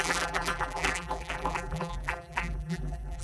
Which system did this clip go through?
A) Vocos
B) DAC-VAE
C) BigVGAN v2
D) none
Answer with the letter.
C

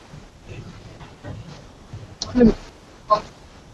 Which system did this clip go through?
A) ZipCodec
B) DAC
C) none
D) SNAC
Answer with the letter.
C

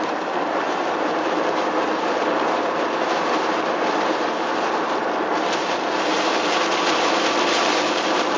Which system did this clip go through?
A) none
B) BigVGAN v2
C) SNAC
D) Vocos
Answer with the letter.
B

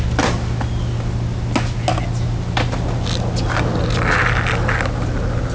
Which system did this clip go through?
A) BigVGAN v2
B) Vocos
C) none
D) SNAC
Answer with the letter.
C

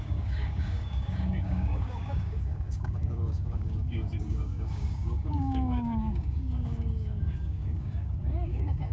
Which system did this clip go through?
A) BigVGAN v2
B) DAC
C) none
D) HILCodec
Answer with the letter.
B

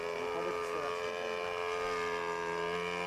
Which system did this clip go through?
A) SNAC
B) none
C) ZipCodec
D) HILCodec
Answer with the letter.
B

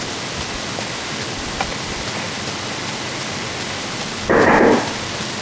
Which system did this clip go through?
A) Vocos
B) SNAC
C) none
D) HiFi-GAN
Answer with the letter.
C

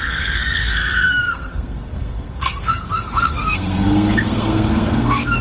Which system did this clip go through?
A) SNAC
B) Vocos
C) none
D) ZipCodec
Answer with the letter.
A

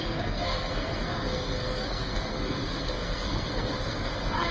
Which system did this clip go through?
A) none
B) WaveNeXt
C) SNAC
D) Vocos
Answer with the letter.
C